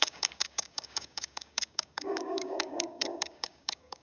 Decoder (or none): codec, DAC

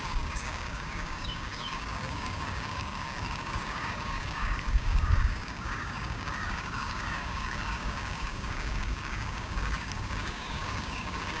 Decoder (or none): codec, DAC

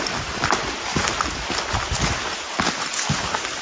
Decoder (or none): none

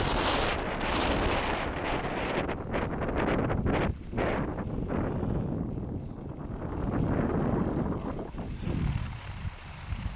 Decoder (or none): none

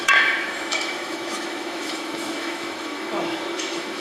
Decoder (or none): autoencoder, DAC-VAE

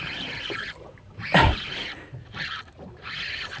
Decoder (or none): vocoder, BigVGAN v2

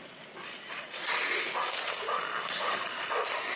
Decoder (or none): none